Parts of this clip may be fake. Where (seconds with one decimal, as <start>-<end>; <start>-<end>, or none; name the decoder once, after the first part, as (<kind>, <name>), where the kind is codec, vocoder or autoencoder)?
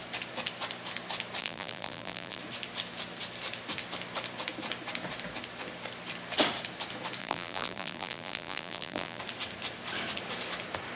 1.4-2.4 (vocoder, BigVGAN v2); 7.2-9.2